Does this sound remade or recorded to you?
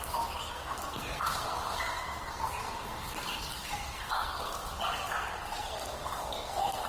remade